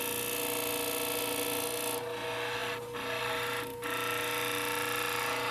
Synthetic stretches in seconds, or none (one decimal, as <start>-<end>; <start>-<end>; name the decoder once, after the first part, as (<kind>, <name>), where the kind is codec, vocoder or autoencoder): none